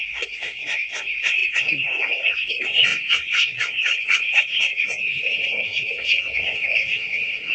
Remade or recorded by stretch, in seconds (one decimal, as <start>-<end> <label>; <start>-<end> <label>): 0.0-7.5 remade